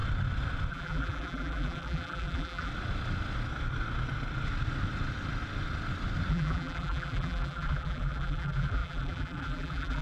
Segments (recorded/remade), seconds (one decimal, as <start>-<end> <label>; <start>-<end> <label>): 0.0-0.7 recorded; 0.7-2.7 remade; 2.7-6.3 recorded; 6.3-10.0 remade